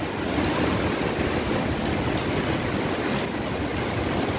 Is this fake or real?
real